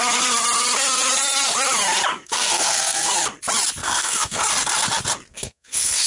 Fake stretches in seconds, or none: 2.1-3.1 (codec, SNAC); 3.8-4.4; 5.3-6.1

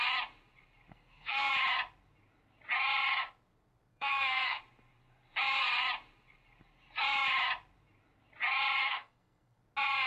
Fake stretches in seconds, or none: 0.9-1.5 (codec, SNAC); 3.9-4.6; 8.8-9.6

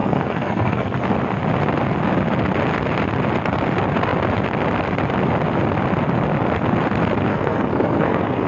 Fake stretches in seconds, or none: 0.0-1.0 (codec, SNAC); 7.3-8.5